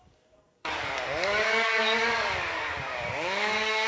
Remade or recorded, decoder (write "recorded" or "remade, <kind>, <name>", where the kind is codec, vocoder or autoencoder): remade, codec, DAC